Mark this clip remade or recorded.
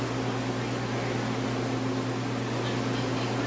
recorded